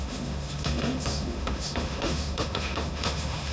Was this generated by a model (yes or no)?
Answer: yes